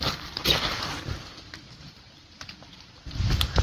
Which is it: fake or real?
real